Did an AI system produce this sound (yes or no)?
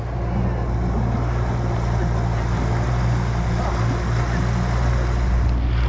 no